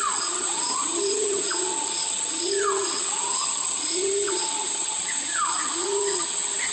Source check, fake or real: fake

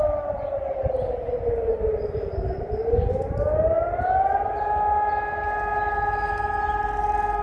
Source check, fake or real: real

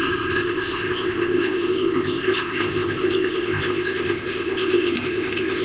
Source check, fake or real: fake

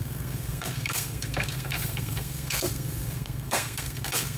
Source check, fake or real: fake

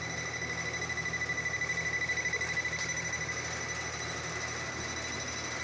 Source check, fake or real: real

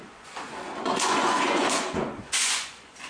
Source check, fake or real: fake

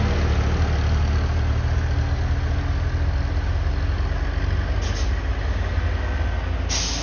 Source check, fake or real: real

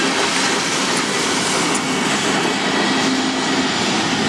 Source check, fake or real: real